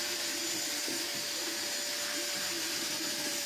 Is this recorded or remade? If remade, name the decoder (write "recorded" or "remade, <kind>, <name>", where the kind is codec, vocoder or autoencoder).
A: remade, vocoder, BigVGAN v2